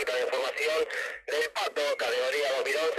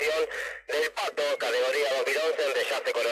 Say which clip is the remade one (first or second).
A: first